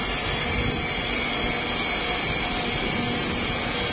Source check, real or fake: real